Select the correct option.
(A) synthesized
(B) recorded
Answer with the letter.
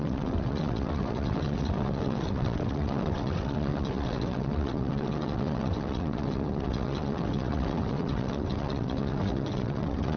A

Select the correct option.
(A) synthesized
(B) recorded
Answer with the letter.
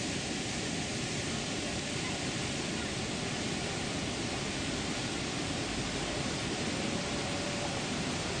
B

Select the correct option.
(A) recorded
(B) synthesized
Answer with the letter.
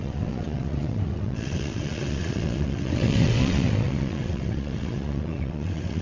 B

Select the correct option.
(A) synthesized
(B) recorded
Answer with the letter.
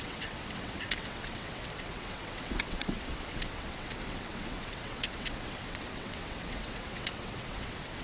A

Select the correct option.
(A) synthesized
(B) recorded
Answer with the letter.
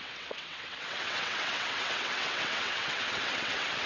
A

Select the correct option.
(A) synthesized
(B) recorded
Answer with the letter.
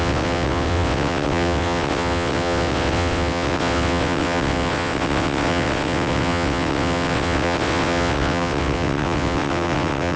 A